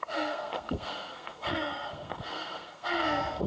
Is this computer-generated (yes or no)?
yes